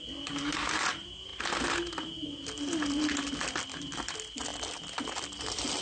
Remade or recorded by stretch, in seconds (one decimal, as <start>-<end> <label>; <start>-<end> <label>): 0.0-5.8 recorded